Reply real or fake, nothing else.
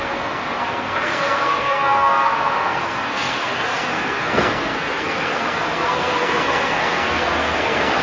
fake